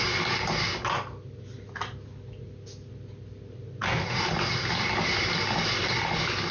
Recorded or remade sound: recorded